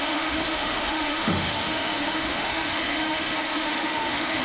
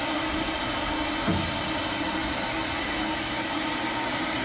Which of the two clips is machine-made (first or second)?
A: first